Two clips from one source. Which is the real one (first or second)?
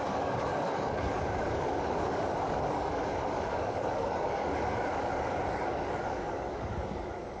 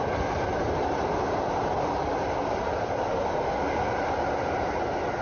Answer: second